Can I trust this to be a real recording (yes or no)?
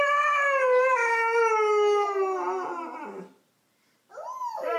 yes